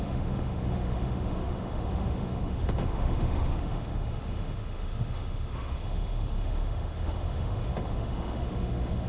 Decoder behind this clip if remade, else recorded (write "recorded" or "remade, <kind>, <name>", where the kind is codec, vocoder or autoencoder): remade, autoencoder, DAC-VAE